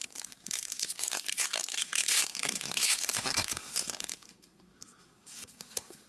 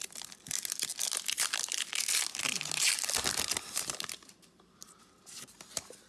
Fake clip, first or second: first